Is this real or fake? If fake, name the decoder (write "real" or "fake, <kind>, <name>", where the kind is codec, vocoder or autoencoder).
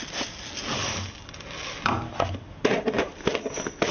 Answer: real